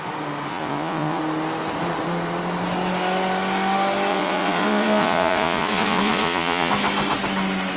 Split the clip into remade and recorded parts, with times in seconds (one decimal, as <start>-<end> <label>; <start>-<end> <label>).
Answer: 0.0-0.5 recorded; 0.5-1.2 remade; 1.2-4.1 recorded; 4.1-6.7 remade; 6.7-7.8 recorded